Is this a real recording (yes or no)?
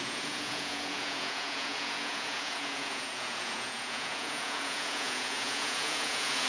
no